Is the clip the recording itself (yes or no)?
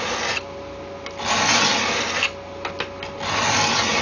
yes